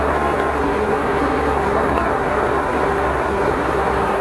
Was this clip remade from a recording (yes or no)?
yes